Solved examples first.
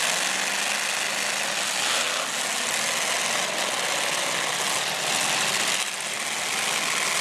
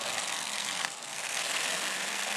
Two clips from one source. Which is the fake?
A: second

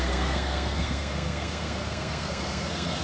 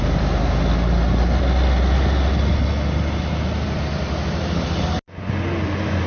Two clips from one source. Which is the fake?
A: first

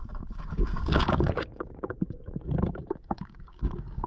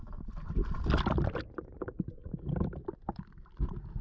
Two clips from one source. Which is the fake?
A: first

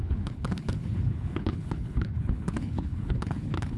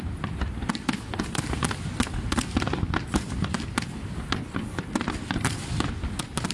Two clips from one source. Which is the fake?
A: first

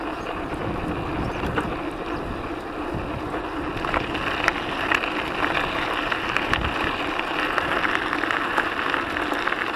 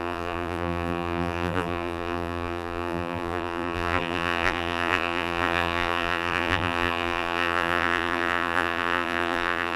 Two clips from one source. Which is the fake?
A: second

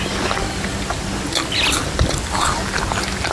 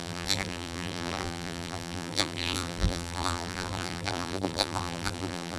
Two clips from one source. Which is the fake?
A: second